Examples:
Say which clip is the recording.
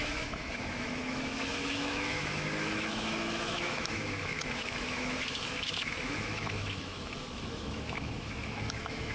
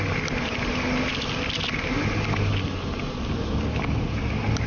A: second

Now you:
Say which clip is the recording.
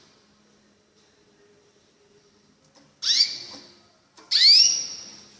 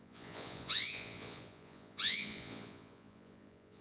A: first